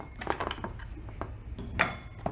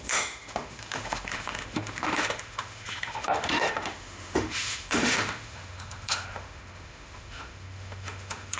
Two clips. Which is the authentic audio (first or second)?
first